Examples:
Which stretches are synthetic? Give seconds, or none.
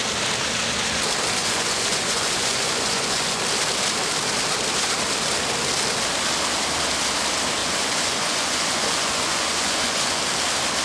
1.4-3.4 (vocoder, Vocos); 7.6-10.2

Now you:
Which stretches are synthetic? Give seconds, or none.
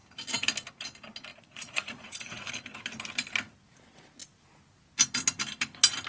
1.3-2.5 (vocoder, Vocos)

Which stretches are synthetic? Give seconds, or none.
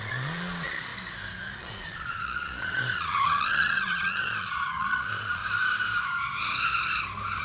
0.0-0.9 (vocoder, Vocos); 1.6-5.4